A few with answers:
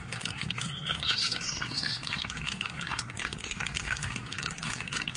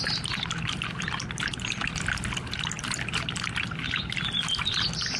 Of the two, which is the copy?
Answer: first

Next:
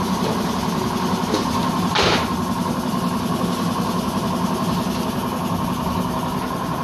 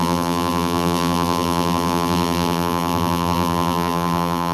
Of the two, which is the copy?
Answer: second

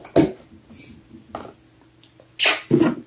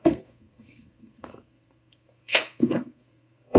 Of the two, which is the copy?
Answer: second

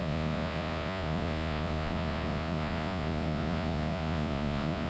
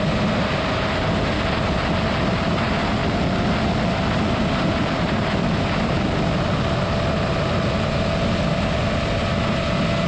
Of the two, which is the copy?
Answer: first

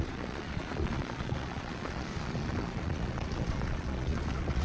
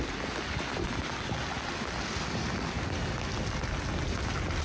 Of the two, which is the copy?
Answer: first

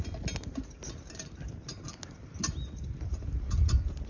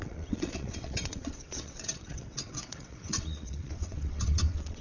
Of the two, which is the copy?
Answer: second